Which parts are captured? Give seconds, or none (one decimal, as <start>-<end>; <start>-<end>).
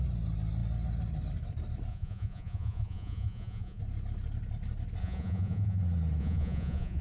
0.0-1.9; 3.8-5.0; 5.8-6.2